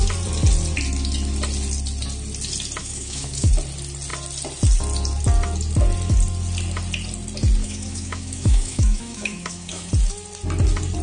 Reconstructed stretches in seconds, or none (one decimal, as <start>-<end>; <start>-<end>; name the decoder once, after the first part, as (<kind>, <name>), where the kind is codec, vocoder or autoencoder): 2.8-3.5 (autoencoder, DAC-VAE); 7.6-9.9